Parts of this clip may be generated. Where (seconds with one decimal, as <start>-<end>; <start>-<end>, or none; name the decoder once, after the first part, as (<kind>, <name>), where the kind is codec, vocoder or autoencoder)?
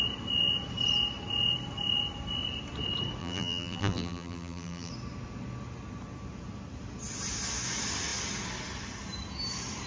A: 3.2-4.9 (vocoder, BigVGAN v2)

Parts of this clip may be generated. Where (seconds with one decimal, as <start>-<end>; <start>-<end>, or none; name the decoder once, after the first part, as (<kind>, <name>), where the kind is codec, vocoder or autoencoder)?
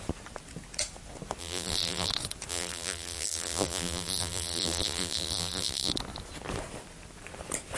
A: 1.4-2.1 (vocoder, BigVGAN v2); 2.5-5.9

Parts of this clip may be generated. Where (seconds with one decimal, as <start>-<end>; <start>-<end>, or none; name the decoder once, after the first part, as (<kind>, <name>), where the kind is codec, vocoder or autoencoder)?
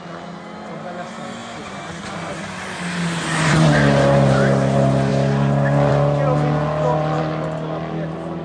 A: none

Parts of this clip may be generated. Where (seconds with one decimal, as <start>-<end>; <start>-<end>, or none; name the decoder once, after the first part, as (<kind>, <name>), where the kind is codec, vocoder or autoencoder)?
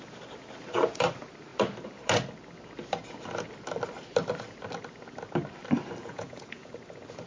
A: 6.0-6.7 (vocoder, Vocos)